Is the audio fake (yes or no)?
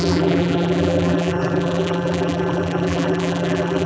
yes